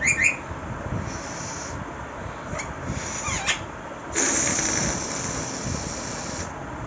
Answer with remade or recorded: recorded